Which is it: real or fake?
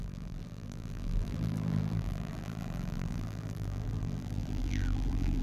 fake